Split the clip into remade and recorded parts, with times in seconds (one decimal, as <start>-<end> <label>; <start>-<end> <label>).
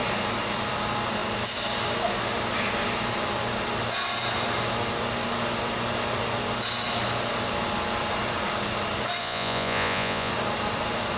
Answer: 0.0-9.2 recorded; 9.2-10.3 remade; 10.3-11.2 recorded